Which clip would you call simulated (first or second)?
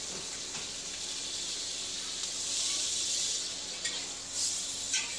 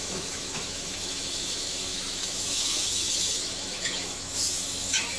second